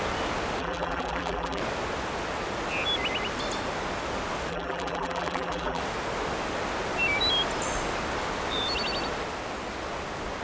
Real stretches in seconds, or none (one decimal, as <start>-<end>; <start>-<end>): 0.0-0.6; 1.6-4.5; 5.8-10.4